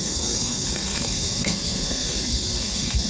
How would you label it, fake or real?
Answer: fake